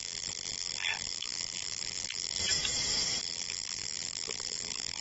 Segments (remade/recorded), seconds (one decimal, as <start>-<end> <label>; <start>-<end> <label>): 0.0-2.4 remade; 2.4-3.2 recorded; 3.2-5.0 remade